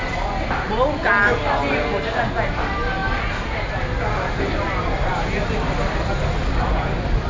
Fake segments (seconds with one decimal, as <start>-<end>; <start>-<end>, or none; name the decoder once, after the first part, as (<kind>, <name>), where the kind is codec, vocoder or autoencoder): none